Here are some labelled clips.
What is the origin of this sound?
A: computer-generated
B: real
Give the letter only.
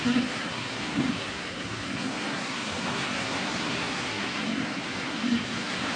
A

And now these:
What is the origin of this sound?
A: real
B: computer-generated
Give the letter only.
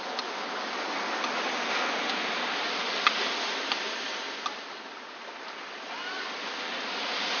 A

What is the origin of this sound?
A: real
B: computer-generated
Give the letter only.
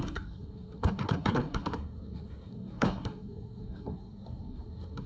B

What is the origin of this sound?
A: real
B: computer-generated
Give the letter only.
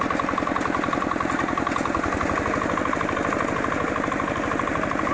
A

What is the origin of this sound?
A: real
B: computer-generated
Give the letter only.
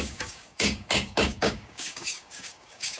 B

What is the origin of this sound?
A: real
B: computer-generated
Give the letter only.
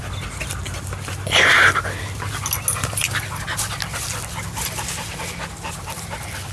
A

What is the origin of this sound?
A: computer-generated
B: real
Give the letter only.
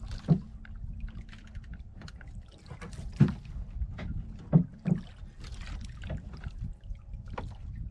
B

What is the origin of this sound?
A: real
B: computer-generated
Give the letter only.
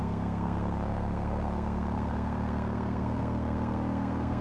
B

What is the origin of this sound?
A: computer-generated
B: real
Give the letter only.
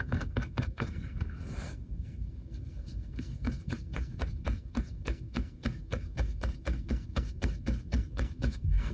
A